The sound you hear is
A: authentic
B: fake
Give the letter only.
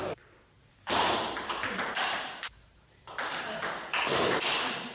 B